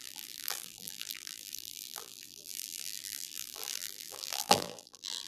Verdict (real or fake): fake